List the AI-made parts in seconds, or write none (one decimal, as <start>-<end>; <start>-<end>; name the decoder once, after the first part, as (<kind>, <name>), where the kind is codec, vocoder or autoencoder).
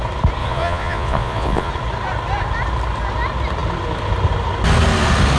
0.4-1.7 (vocoder, Vocos)